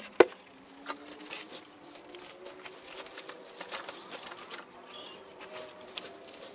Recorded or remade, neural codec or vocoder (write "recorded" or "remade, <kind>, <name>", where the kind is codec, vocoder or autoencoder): recorded